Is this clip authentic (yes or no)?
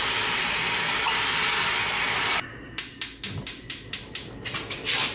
yes